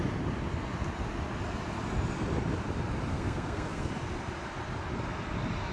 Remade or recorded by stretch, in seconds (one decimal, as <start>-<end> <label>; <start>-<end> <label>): 0.0-3.1 recorded; 3.1-3.9 remade; 3.9-5.7 recorded